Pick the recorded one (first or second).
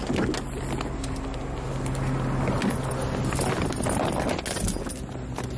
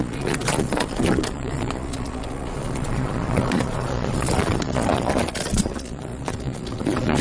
first